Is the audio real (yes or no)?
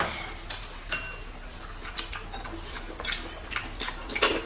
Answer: yes